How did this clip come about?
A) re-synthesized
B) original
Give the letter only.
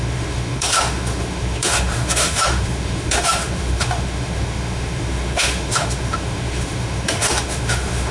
A